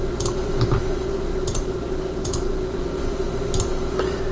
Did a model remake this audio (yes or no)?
no